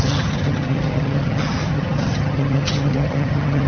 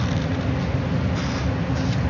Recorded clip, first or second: second